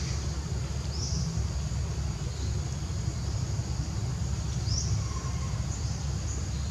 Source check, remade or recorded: recorded